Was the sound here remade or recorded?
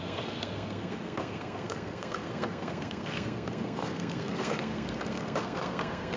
remade